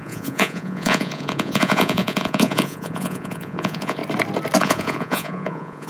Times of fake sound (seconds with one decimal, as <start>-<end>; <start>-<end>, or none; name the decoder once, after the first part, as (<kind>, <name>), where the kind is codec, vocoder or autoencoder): 0.0-4.0 (vocoder, Vocos); 4.6-5.9